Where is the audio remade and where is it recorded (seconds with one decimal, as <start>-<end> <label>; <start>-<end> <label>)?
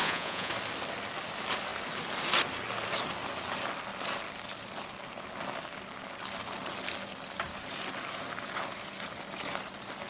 0.0-0.5 remade; 0.5-10.1 recorded